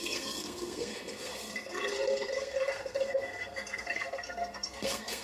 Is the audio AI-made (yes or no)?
yes